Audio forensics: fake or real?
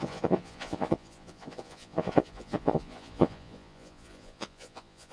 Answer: fake